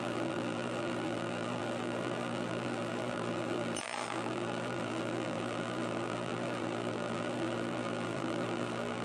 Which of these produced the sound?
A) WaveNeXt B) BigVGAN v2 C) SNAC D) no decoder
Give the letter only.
B